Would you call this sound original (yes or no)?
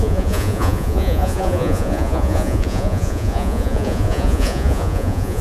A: no